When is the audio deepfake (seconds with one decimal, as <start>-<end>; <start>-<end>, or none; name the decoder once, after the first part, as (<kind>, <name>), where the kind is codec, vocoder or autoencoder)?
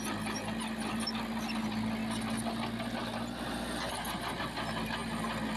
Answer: none